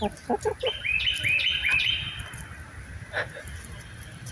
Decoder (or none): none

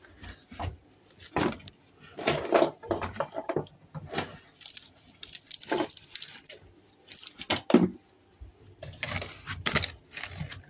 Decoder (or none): none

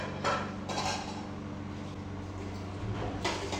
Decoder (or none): none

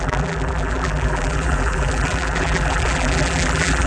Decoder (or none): vocoder, BigVGAN v2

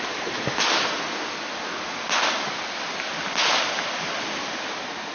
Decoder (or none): none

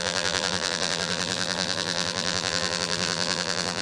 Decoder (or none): vocoder, BigVGAN v2